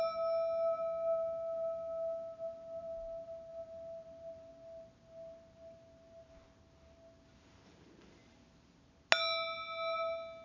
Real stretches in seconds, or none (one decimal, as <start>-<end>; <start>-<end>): 0.0-10.4